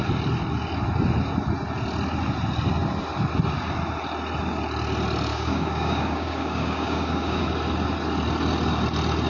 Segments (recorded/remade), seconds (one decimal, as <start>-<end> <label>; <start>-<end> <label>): 0.0-5.3 recorded; 5.3-7.4 remade; 7.4-9.3 recorded